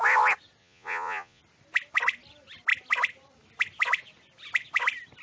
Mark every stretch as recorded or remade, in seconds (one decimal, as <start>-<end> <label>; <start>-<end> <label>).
0.0-0.6 recorded; 0.6-1.4 remade; 1.4-5.2 recorded